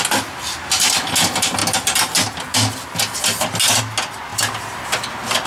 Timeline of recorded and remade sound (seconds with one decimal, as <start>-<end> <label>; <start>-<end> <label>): 0.0-4.3 recorded; 4.3-4.8 remade; 4.8-5.5 recorded